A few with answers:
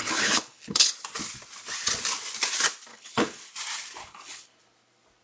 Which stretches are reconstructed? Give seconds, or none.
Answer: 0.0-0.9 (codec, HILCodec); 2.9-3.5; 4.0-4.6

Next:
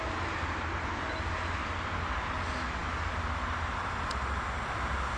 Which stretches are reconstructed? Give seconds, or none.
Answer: none

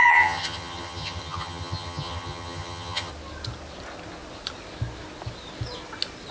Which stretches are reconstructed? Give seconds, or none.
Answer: 0.0-3.1 (vocoder, HiFi-GAN)

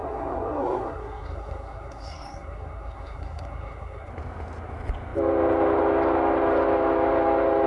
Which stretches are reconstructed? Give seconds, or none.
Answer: 0.0-4.1 (codec, SNAC)

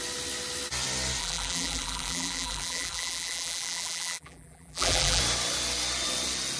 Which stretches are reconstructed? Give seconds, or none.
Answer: 1.2-5.2 (vocoder, BigVGAN v2)

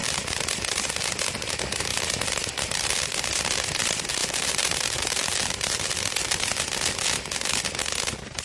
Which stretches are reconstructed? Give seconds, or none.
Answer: 0.0-0.9 (vocoder, BigVGAN v2); 1.9-3.4; 4.2-6.8

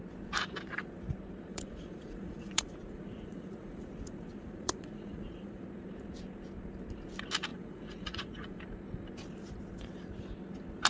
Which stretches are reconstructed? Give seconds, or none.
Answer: 1.5-5.6 (vocoder, Vocos); 7.5-8.6